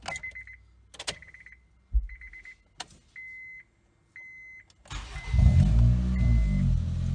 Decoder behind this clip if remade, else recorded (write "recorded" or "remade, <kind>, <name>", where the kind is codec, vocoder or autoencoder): recorded